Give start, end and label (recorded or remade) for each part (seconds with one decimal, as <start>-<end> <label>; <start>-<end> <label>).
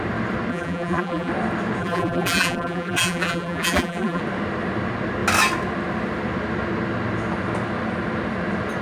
0.0-0.5 recorded; 0.5-1.3 remade; 1.3-1.8 recorded; 1.8-4.2 remade; 4.2-8.8 recorded